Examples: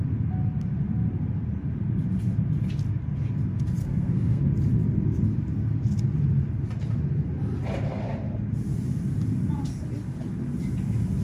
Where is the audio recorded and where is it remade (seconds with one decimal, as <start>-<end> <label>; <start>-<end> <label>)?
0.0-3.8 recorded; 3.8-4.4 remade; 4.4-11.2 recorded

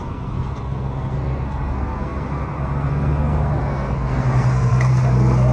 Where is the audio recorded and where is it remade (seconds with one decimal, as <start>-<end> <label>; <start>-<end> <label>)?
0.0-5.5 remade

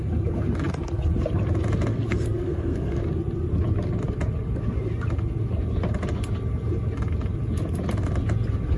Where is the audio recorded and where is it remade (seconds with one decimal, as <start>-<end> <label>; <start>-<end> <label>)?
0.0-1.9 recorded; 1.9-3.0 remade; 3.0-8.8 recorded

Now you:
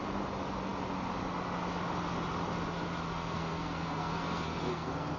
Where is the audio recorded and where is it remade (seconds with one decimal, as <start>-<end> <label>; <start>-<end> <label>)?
0.0-3.1 recorded; 3.1-5.2 remade

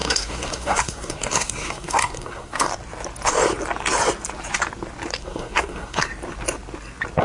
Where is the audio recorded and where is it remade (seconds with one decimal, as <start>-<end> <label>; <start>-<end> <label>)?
0.0-2.7 remade; 2.7-5.2 recorded; 5.2-6.1 remade; 6.1-7.2 recorded